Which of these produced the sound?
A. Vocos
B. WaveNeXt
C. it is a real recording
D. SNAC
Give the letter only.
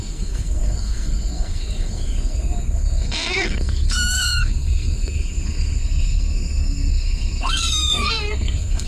D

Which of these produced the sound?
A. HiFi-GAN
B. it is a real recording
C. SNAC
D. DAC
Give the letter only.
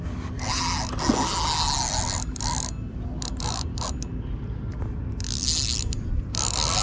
B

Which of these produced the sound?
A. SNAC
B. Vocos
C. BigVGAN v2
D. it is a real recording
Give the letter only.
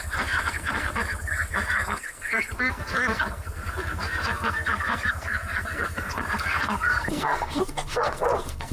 A